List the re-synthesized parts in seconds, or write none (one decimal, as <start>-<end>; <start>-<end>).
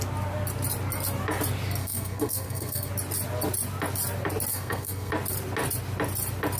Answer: 1.8-2.9; 4.5-5.1